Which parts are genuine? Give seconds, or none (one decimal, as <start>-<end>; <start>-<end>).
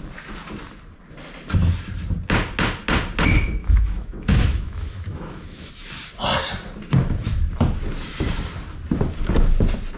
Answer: 0.0-3.6; 5.7-10.0